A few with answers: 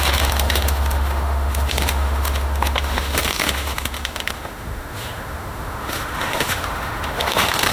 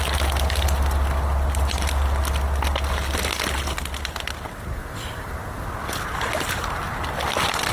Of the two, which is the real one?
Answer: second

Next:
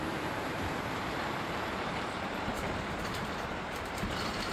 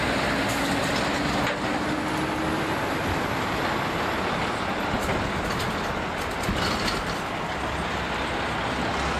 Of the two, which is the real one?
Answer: second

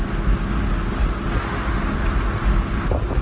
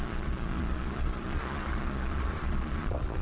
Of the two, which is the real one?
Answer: first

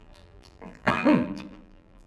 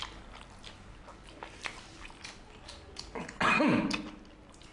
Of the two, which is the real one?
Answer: second